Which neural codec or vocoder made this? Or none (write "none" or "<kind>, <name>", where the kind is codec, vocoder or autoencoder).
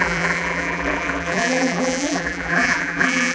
vocoder, BigVGAN v2